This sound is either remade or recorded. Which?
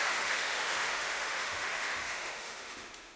remade